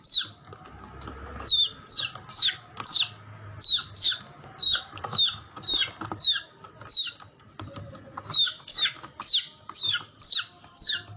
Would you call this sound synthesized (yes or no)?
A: no